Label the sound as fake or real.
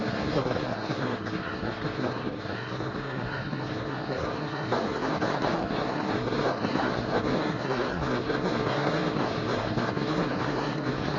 fake